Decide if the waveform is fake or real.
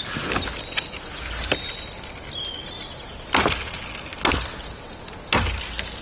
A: real